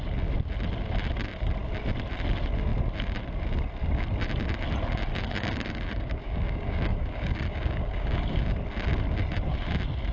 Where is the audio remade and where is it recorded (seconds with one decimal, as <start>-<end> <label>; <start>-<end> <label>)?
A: 0.0-5.1 recorded; 5.1-8.4 remade; 8.4-10.1 recorded